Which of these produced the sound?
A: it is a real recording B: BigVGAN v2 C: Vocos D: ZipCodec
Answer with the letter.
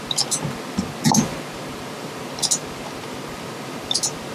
A